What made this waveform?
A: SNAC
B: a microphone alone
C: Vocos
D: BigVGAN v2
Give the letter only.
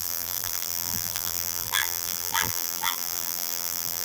D